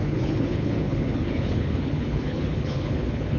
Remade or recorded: remade